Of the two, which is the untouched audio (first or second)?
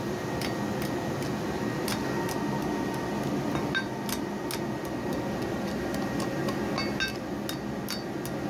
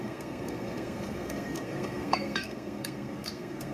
first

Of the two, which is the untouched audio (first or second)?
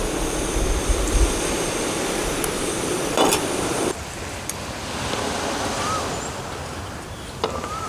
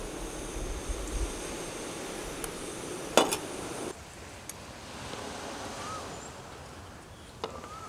second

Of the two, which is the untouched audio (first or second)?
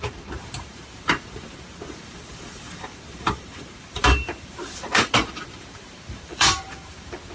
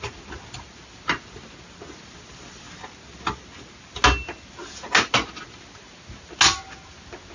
second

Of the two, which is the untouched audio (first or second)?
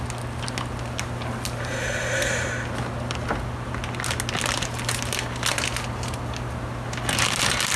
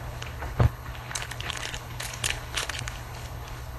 first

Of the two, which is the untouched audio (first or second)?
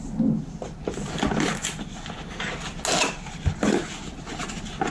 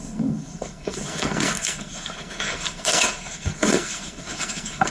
first